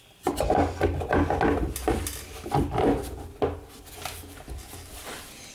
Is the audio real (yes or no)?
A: yes